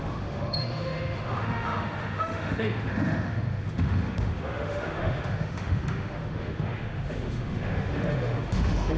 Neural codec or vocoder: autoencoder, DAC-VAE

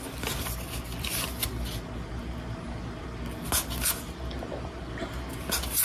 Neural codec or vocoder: none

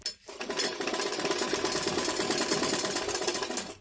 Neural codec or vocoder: none